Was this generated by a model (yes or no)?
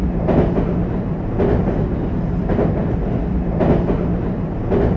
no